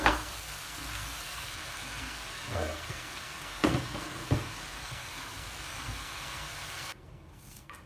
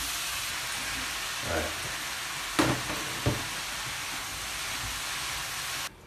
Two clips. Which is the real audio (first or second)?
second